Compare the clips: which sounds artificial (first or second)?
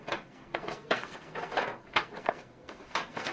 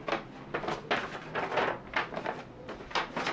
first